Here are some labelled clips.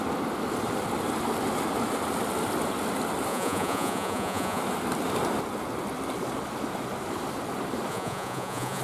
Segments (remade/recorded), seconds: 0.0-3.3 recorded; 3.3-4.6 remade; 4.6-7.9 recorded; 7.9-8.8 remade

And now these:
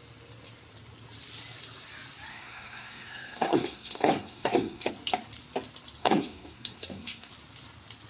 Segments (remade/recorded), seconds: 0.0-2.3 recorded; 2.3-4.9 remade; 4.9-6.0 recorded; 6.0-7.3 remade; 7.3-8.1 recorded